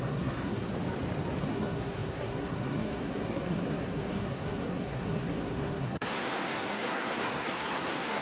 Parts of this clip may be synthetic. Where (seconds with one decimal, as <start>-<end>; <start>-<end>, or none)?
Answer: 0.0-0.7; 1.4-8.2